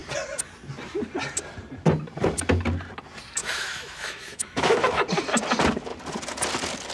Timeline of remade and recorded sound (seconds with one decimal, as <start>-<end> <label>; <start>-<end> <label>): 0.0-3.4 recorded; 3.4-5.0 remade; 5.0-6.9 recorded